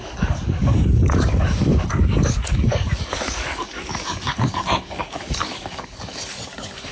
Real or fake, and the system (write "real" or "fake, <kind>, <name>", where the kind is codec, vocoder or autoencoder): fake, codec, DAC